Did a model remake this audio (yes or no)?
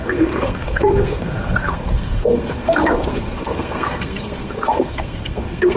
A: yes